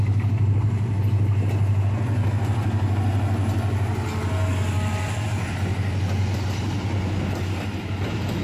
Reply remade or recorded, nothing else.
recorded